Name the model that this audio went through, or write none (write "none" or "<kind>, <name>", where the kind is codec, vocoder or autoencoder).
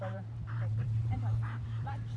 vocoder, BigVGAN v2